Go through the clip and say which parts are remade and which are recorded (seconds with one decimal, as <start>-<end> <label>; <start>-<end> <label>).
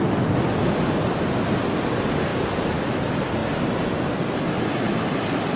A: 0.0-2.3 recorded; 2.3-2.8 remade; 2.8-3.4 recorded; 3.4-4.8 remade; 4.8-5.6 recorded